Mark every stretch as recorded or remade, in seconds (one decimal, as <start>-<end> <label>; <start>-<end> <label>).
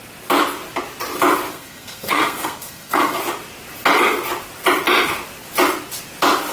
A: 0.0-1.5 recorded; 1.5-3.2 remade; 3.2-6.5 recorded